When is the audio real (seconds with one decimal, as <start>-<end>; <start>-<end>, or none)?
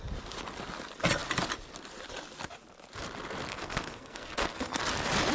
0.0-3.5; 4.8-5.3